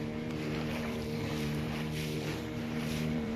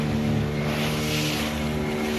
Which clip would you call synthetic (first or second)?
first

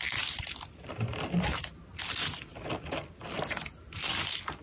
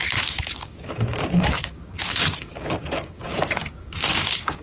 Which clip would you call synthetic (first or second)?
second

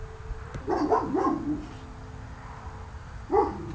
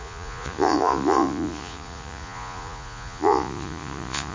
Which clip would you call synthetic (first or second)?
second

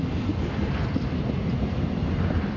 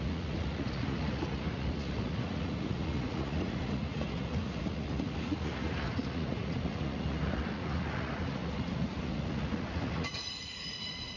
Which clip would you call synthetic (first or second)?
second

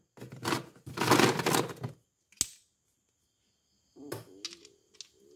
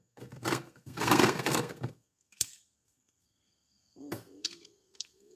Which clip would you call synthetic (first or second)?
second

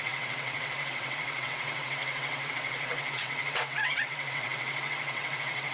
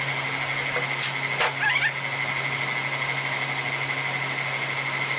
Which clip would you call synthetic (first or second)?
first